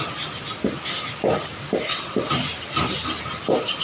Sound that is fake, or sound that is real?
real